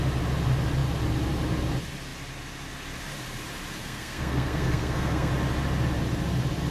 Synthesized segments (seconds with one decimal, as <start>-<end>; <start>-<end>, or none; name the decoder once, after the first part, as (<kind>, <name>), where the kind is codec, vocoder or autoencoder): 3.8-5.3 (codec, SNAC)